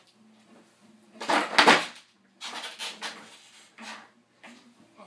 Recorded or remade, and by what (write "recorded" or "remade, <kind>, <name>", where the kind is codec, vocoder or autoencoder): recorded